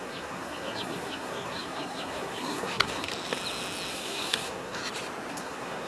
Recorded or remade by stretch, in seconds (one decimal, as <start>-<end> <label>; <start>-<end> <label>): 0.0-3.1 remade; 3.1-3.9 recorded; 3.9-4.8 remade; 4.8-5.3 recorded; 5.3-5.9 remade